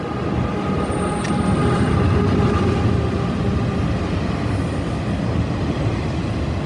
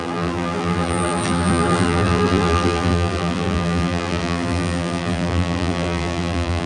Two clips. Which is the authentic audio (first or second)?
first